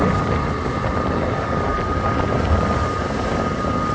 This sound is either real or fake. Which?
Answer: real